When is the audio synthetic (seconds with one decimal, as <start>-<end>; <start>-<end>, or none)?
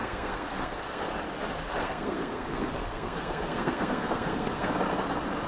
0.0-1.1; 1.8-4.7